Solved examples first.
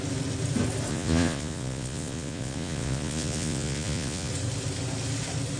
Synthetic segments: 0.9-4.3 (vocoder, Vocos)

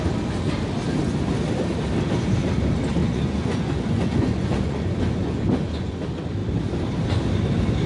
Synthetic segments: 3.0-6.0 (vocoder, Vocos)

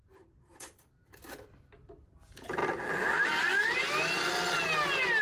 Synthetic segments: none

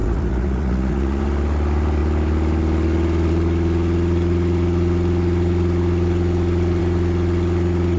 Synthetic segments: 0.0-1.2 (vocoder, Vocos)

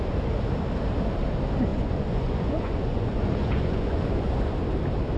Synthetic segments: 1.7-4.5 (vocoder, Vocos)